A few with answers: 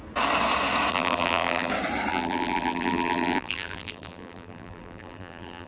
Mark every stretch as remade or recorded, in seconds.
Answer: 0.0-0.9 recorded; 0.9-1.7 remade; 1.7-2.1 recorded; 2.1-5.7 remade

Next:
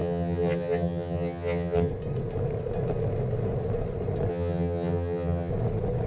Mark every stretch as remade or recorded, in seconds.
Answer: 0.0-1.9 remade; 1.9-4.3 recorded; 4.3-5.5 remade; 5.5-6.1 recorded

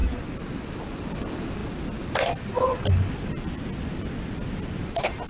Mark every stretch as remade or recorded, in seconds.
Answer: 0.0-5.3 recorded